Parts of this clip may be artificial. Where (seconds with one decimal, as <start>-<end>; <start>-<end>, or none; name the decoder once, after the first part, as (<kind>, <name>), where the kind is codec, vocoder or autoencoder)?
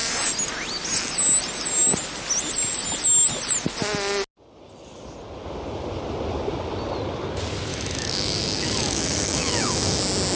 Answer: 7.7-10.0 (autoencoder, DAC-VAE)